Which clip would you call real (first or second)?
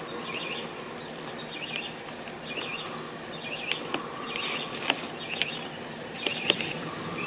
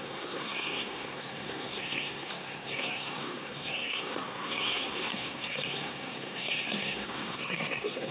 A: first